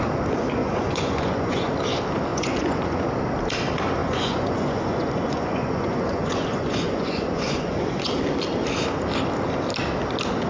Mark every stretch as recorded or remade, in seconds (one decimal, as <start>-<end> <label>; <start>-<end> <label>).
0.0-0.6 recorded; 0.6-1.7 remade; 1.7-2.3 recorded; 2.3-3.0 remade; 3.0-4.0 recorded; 4.0-8.1 remade; 8.1-10.5 recorded